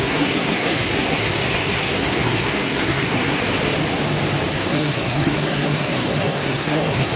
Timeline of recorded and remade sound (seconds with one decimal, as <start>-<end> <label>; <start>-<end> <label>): 0.0-3.4 remade; 3.4-4.5 recorded; 4.5-7.2 remade